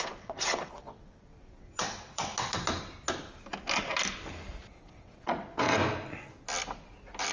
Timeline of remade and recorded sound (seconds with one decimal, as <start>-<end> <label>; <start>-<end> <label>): 0.0-2.3 remade; 2.3-4.8 recorded; 4.8-5.8 remade; 5.8-7.3 recorded